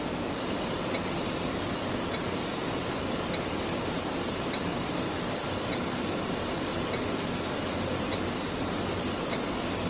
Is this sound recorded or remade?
recorded